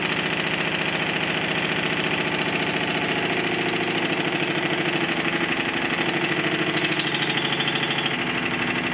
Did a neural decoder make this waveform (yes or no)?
no